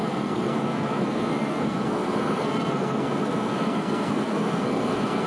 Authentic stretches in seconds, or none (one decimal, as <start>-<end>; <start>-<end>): none

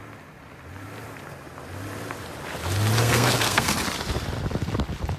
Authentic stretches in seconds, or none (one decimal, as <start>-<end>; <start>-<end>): 0.0-3.0; 3.7-5.2

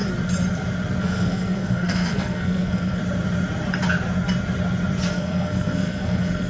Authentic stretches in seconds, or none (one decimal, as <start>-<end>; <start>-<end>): 0.0-1.0; 3.0-5.1

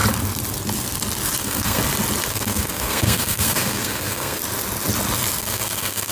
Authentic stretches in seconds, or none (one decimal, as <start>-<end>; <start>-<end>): 0.0-1.4; 1.8-2.3; 4.4-5.4

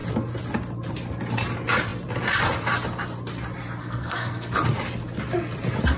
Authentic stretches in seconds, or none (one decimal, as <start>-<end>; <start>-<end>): 0.0-3.8; 4.5-6.0